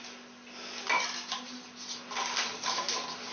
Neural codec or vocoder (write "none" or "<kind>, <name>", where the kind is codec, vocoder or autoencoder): none